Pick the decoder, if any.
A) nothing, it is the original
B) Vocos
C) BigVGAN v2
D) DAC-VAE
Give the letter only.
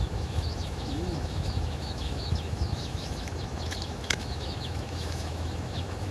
D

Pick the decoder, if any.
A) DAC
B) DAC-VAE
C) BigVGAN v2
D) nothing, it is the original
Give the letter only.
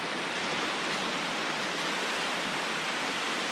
D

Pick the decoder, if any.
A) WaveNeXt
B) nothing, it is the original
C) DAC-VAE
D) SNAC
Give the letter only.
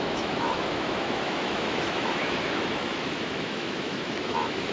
C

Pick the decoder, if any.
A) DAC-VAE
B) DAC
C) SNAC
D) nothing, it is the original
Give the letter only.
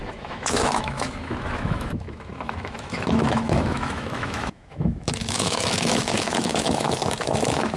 A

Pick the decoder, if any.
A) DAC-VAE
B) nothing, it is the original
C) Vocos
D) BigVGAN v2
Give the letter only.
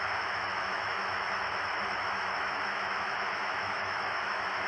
A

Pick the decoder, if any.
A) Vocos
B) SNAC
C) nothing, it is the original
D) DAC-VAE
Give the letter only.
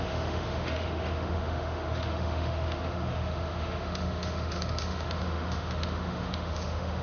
D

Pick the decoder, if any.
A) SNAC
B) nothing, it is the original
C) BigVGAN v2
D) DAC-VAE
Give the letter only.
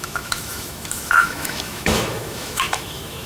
D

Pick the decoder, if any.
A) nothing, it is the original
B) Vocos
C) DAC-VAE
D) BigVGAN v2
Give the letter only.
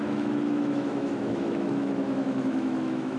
C